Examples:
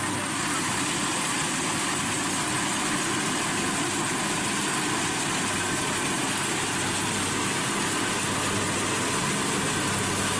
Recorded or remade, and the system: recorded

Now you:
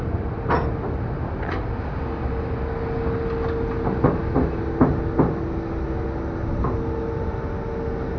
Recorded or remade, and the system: recorded